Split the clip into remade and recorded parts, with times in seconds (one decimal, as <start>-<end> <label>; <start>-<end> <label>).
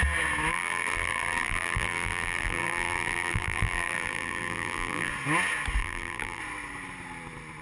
0.0-0.5 recorded; 0.5-5.1 remade; 5.1-5.8 recorded; 5.8-6.4 remade; 6.4-7.6 recorded